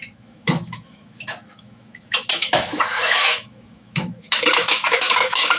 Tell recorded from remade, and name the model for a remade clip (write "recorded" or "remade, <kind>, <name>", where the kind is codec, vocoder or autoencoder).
remade, autoencoder, DAC-VAE